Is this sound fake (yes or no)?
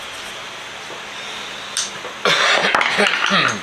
no